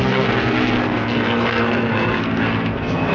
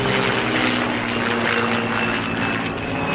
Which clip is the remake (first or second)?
first